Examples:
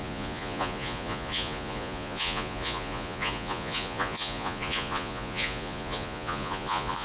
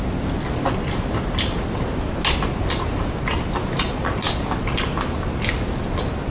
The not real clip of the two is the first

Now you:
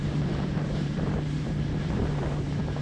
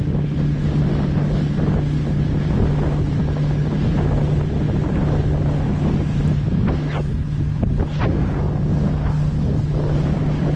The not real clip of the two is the first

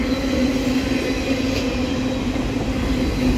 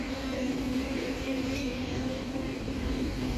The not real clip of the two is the second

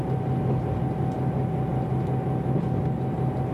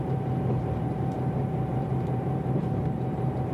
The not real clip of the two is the second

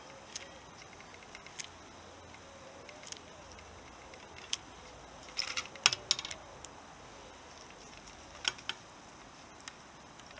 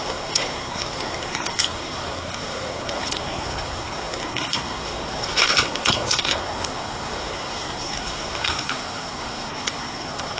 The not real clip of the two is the second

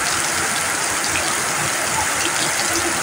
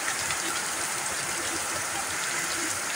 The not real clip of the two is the second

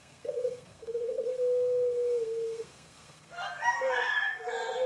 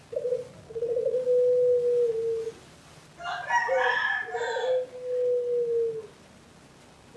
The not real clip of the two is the first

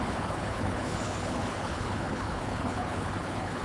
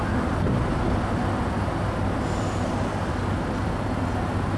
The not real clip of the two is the first